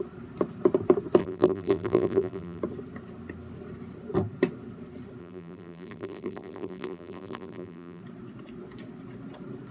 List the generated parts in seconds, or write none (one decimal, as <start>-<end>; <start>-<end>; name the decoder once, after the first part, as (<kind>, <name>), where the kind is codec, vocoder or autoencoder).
1.2-2.6 (vocoder, BigVGAN v2); 5.2-8.0